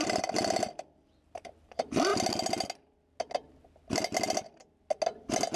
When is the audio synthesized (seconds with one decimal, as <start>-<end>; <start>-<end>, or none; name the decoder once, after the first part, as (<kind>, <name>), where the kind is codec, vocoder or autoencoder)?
0.0-2.1 (vocoder, BigVGAN v2)